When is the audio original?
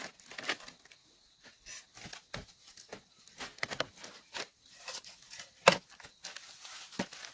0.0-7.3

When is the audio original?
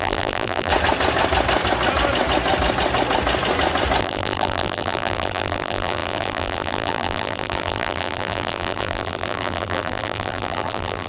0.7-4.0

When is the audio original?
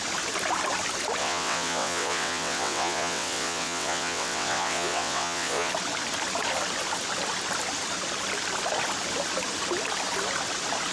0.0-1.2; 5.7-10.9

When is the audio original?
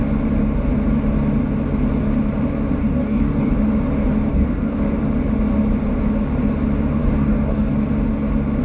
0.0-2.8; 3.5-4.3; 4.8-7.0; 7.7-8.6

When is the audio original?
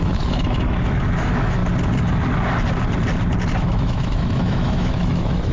1.6-3.6